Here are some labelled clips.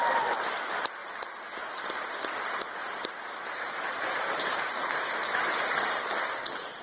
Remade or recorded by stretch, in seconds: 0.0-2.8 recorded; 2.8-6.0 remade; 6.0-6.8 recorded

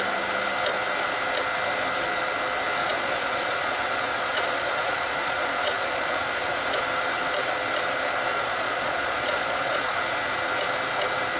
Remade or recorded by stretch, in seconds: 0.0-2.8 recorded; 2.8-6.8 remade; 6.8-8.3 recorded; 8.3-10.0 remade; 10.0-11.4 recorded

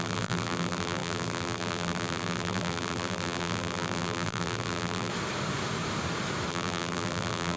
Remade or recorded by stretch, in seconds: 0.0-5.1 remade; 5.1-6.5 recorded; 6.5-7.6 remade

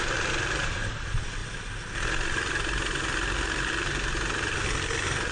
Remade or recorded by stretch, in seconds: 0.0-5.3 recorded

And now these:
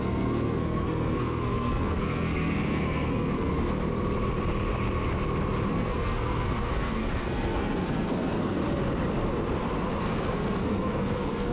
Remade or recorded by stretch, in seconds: 0.0-3.5 remade; 3.5-5.7 recorded; 5.7-8.6 remade; 8.6-10.0 recorded; 10.0-11.5 remade

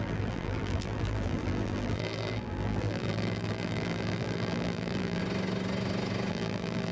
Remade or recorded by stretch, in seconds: 0.0-5.2 remade; 5.2-6.3 recorded; 6.3-6.9 remade

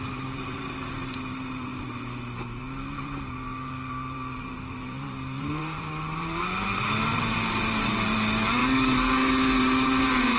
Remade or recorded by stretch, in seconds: 0.0-8.6 remade; 8.6-9.6 recorded; 9.6-10.4 remade